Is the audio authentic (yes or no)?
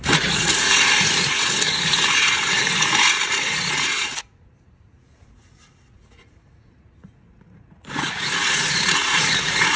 no